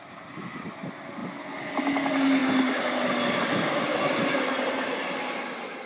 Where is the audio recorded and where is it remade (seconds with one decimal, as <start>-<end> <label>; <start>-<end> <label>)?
0.0-5.9 recorded